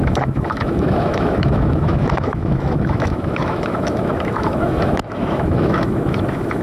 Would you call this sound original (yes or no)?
no